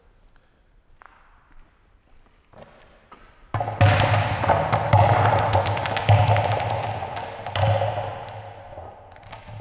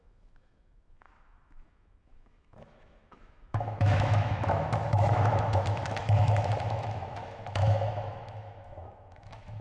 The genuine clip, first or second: first